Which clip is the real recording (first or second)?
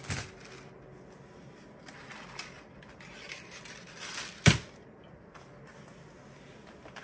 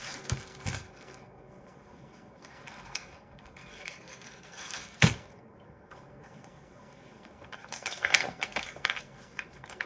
first